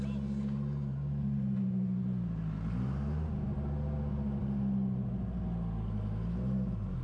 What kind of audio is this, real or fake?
real